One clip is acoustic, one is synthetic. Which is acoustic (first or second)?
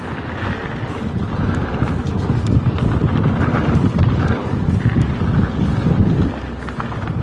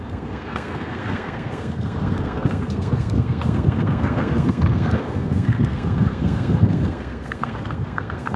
first